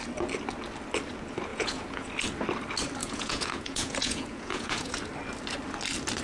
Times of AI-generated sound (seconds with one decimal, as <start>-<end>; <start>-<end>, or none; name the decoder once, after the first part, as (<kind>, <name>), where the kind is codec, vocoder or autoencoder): 1.5-2.1 (vocoder, Vocos); 3.0-4.9